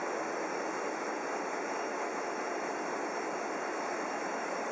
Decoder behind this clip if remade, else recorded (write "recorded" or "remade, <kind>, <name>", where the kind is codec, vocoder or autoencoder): recorded